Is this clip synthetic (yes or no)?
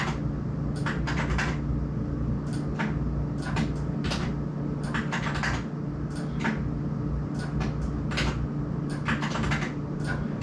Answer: no